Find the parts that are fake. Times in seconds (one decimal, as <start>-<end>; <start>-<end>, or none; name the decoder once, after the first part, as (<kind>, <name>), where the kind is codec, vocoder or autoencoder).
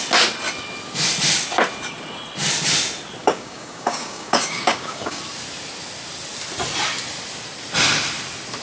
3.2-5.2 (codec, DAC)